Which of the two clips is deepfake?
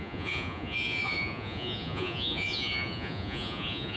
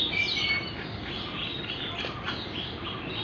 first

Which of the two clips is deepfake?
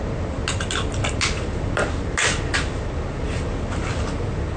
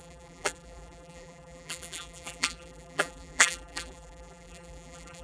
second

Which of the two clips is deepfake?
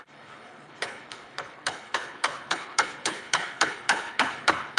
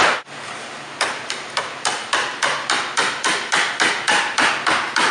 first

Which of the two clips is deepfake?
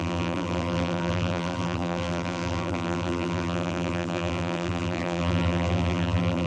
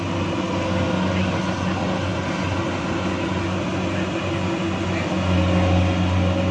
first